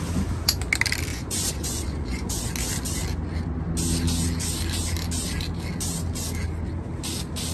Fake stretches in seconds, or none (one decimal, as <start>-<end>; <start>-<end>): 1.1-2.4